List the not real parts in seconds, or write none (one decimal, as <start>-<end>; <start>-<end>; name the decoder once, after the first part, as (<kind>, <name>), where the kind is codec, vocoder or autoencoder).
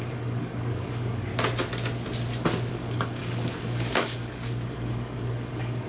0.0-1.3 (codec, DAC); 2.7-5.9